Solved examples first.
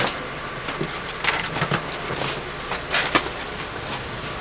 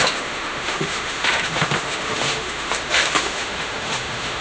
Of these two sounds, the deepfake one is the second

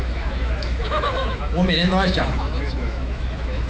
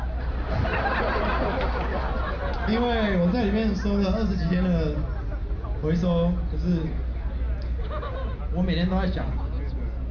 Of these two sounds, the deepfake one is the first